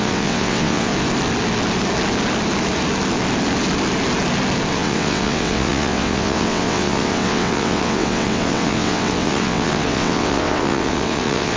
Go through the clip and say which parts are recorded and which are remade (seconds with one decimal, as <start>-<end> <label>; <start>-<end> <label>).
0.0-0.9 remade; 0.9-4.7 recorded; 4.7-11.6 remade